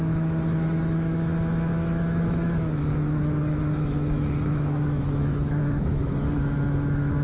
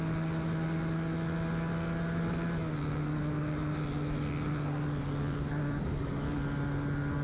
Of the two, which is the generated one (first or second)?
first